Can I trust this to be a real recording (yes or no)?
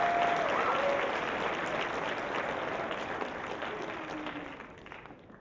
yes